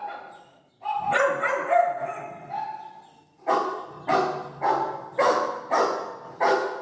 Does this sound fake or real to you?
real